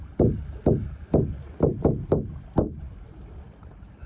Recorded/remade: recorded